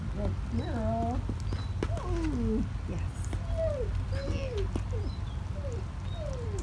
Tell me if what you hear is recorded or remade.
recorded